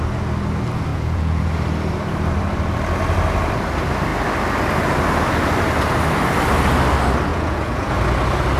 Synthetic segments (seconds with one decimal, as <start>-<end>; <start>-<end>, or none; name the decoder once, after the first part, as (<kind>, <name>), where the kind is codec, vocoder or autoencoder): 0.9-1.5 (vocoder, Vocos); 7.3-7.9